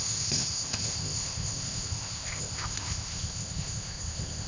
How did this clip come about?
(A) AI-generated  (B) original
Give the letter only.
A